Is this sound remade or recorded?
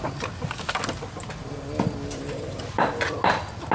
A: recorded